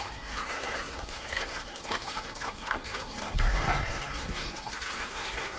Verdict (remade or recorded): remade